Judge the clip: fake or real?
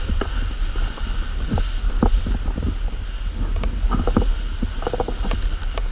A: real